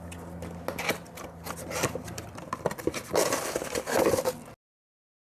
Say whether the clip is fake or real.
real